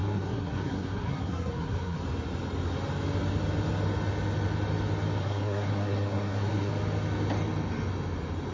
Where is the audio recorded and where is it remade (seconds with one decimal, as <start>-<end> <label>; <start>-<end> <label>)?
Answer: 0.0-2.0 remade; 2.0-5.2 recorded; 5.2-6.7 remade; 6.7-8.5 recorded